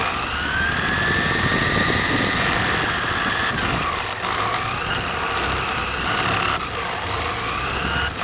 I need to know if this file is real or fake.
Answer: real